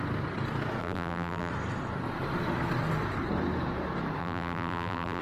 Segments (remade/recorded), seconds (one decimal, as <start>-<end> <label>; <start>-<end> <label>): 0.0-0.8 recorded; 0.8-1.5 remade; 1.5-4.2 recorded; 4.2-5.2 remade